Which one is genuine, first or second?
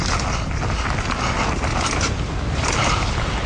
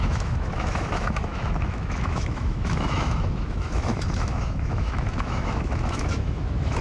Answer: first